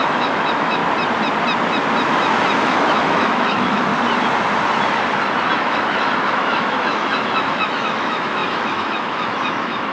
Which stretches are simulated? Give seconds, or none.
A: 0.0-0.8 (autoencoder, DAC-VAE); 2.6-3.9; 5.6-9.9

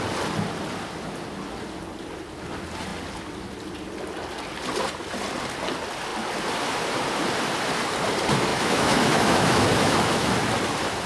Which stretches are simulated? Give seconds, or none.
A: 8.5-10.3 (autoencoder, DAC-VAE)